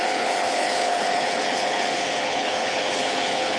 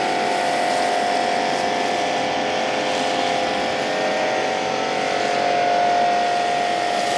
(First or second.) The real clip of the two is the second